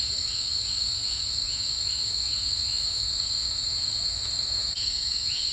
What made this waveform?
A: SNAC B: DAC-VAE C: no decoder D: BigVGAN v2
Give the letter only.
B